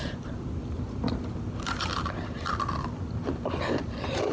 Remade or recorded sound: remade